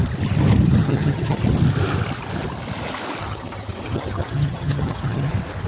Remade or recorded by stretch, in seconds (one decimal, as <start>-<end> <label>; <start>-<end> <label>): 0.0-0.8 recorded; 0.8-1.4 remade; 1.4-3.2 recorded; 3.2-5.3 remade; 5.3-5.7 recorded